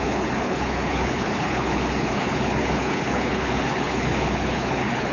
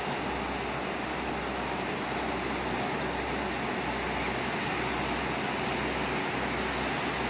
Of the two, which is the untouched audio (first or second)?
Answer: second